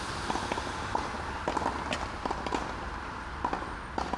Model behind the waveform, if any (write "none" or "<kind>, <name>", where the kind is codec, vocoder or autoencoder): none